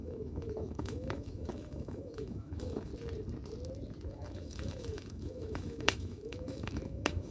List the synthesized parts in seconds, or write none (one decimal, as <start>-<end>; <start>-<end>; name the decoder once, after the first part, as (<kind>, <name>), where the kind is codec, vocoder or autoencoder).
0.0-2.9 (autoencoder, DAC-VAE); 4.1-7.3